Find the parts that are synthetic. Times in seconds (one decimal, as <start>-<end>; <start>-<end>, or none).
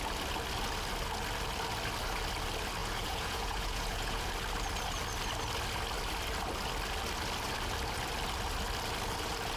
2.8-4.3